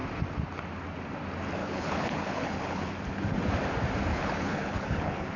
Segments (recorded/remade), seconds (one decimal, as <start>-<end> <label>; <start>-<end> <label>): 0.0-1.6 recorded; 1.6-2.9 remade; 2.9-4.1 recorded; 4.1-5.4 remade